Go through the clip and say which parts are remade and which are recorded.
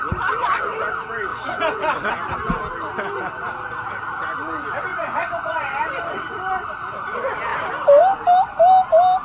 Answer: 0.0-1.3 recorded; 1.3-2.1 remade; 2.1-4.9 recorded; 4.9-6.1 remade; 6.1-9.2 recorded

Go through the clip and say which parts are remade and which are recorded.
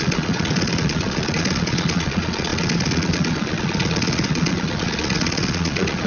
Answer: 0.0-6.1 remade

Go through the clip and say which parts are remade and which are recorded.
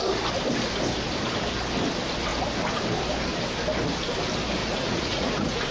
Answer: 0.0-4.6 recorded; 4.6-5.7 remade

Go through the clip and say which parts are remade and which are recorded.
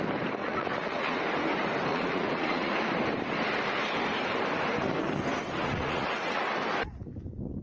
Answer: 0.0-0.4 recorded; 0.4-1.2 remade; 1.2-1.9 recorded; 1.9-2.7 remade; 2.7-5.6 recorded; 5.6-6.4 remade; 6.4-7.6 recorded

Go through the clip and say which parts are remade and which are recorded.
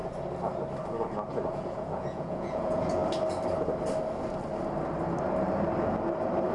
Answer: 0.0-1.5 recorded; 1.5-3.0 remade; 3.0-6.5 recorded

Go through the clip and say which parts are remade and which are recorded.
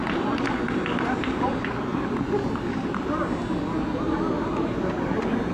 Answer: 0.0-5.5 recorded